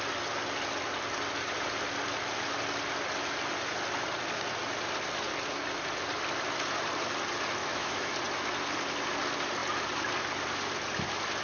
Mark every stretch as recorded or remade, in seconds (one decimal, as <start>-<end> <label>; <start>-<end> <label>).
0.0-7.6 recorded; 7.6-8.1 remade; 8.1-11.4 recorded